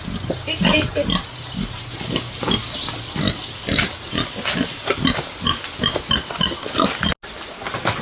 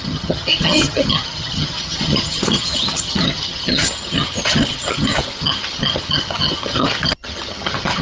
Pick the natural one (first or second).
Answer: first